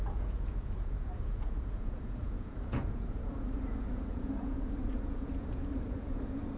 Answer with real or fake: fake